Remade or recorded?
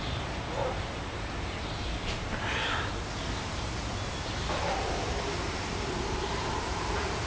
remade